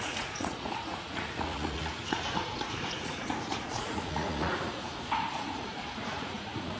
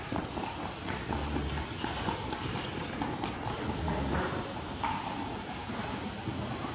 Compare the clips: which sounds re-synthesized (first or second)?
first